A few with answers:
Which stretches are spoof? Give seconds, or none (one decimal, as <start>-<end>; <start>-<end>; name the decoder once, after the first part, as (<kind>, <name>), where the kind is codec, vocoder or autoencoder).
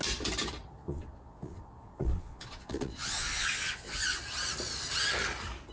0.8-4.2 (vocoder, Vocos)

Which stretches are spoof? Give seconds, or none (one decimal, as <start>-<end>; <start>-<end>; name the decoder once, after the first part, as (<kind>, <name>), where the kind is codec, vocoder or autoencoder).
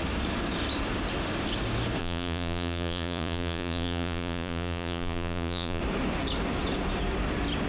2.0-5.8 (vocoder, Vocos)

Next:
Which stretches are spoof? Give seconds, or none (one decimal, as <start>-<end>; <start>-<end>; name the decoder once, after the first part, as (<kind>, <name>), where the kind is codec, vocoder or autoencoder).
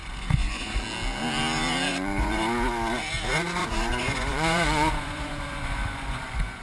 0.0-0.8 (vocoder, Vocos); 1.9-2.4; 3.6-6.6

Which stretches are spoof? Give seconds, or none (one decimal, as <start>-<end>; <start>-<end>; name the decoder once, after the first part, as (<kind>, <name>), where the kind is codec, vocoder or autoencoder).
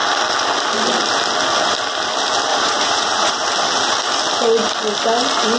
2.5-3.3 (vocoder, Vocos)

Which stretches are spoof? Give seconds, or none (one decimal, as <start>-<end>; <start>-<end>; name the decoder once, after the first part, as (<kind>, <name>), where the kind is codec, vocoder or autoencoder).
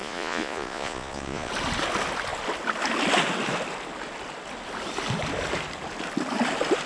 0.0-1.5 (vocoder, Vocos)